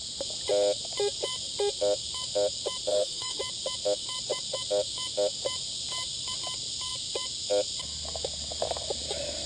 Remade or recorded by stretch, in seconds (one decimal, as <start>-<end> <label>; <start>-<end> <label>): 0.0-2.9 recorded; 2.9-3.4 remade; 3.4-9.5 recorded